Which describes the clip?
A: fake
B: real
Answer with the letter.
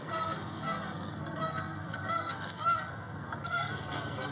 A